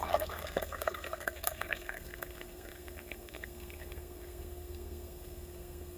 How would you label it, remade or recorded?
remade